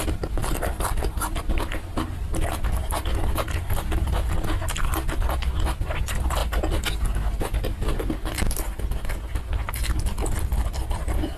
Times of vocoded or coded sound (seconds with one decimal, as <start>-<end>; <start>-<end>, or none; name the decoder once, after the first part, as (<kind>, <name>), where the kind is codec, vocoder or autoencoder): 0.4-1.6 (vocoder, BigVGAN v2); 6.4-7.0